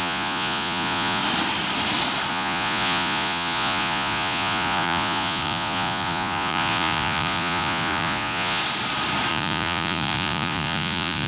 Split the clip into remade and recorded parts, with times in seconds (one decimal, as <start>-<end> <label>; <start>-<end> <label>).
0.0-1.2 remade; 1.2-2.3 recorded; 2.3-8.6 remade; 8.6-9.3 recorded; 9.3-11.3 remade